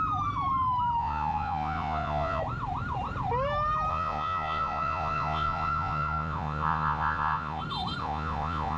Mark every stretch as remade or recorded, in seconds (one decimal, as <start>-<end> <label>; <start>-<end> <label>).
0.0-1.0 recorded; 1.0-2.4 remade; 2.4-3.9 recorded; 3.9-7.6 remade; 7.6-8.0 recorded; 8.0-8.8 remade